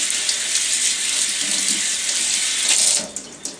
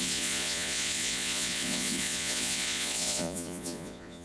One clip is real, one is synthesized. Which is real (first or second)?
first